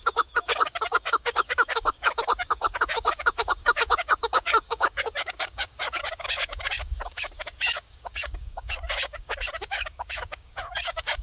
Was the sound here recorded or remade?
remade